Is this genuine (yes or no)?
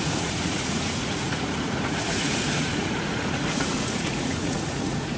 no